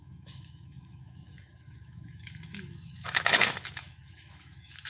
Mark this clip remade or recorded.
remade